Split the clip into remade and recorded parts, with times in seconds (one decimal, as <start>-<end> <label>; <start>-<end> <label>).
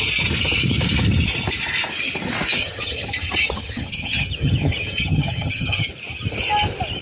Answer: 0.0-2.6 recorded; 2.6-5.9 remade; 5.9-7.0 recorded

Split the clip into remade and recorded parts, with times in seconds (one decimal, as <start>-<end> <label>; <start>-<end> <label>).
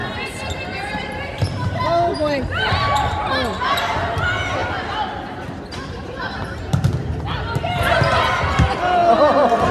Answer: 0.0-2.6 remade; 2.6-9.7 recorded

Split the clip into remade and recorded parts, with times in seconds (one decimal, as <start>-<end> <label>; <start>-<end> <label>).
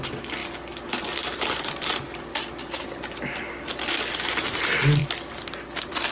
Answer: 0.0-6.1 recorded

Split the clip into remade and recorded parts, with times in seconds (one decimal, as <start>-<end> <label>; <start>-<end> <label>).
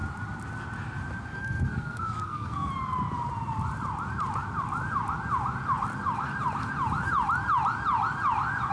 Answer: 0.0-1.3 recorded; 1.3-2.7 remade; 2.7-8.7 recorded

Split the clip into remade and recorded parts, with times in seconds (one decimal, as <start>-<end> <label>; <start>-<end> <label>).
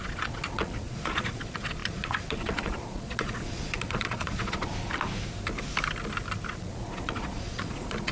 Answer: 0.0-4.7 remade; 4.7-6.5 recorded; 6.5-8.1 remade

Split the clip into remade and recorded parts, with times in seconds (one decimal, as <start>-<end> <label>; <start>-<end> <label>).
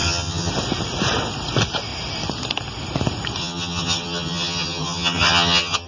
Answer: 0.0-0.5 remade; 0.5-3.4 recorded; 3.4-5.9 remade